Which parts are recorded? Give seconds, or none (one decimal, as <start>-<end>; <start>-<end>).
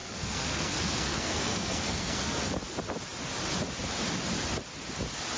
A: 2.4-5.4